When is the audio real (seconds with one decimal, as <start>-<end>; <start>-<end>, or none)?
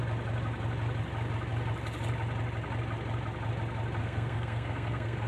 0.0-4.0